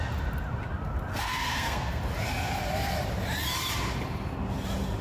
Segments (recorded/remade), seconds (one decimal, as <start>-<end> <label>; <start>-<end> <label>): 0.0-1.1 recorded; 1.1-2.0 remade; 2.0-5.0 recorded